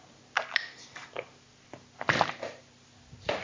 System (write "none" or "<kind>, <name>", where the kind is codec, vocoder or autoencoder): none